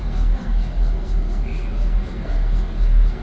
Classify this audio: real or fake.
fake